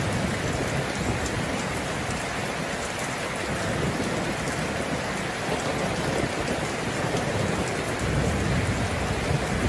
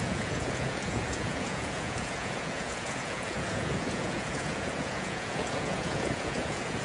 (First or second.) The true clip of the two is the first